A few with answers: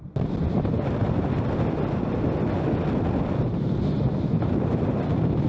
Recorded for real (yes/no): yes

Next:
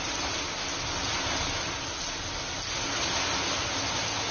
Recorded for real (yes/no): yes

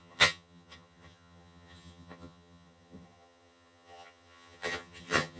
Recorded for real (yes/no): no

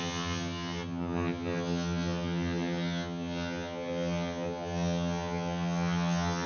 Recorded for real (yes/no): no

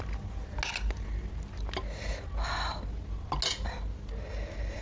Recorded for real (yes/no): yes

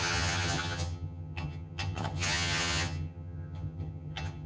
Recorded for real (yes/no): no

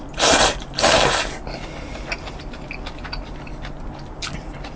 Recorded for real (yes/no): yes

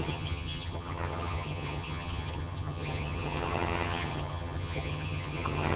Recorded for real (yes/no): no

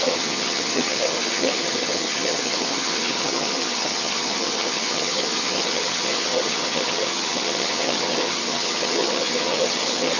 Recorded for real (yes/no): no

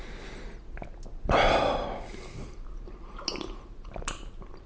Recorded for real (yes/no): yes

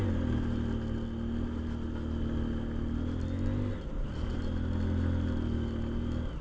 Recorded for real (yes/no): yes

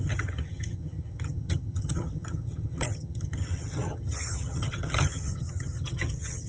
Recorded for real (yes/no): no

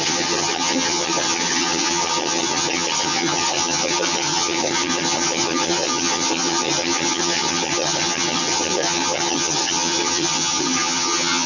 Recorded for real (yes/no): no